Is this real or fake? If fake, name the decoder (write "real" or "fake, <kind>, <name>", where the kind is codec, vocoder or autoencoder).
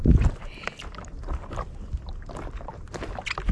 real